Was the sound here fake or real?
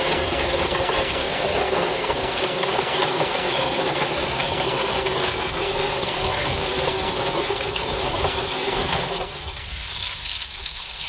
fake